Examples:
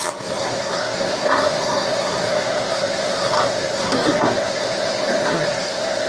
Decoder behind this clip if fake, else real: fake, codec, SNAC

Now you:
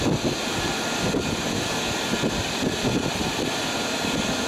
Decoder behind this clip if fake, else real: real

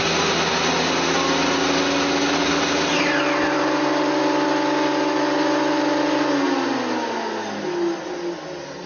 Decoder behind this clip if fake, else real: real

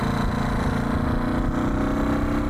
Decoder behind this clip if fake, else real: real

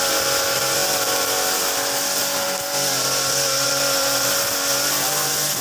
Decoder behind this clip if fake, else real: real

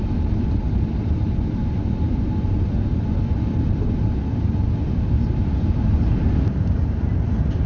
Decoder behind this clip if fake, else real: real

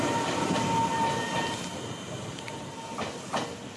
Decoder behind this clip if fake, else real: real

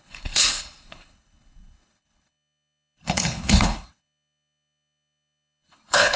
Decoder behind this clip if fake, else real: fake, codec, HILCodec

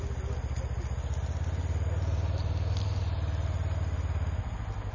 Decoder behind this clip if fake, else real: real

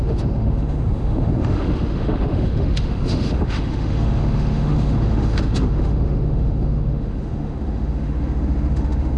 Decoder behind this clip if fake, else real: fake, autoencoder, DAC-VAE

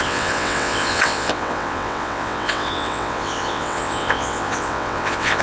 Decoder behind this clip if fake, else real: fake, vocoder, WaveNeXt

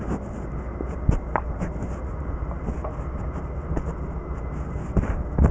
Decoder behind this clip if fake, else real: fake, vocoder, BigVGAN v2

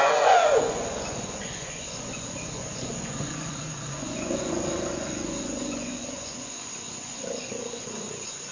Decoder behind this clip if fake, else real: fake, vocoder, Vocos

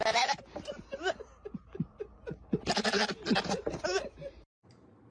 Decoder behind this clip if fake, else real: real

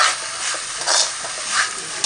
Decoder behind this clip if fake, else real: real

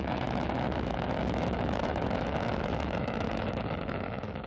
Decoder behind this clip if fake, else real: fake, autoencoder, DAC-VAE